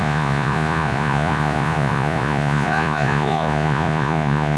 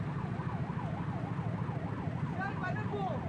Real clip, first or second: second